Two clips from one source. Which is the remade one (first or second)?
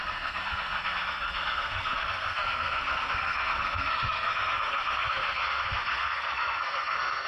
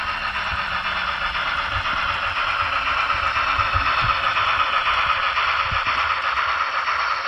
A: first